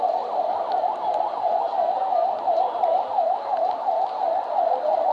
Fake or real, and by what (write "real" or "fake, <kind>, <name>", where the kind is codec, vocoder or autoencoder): real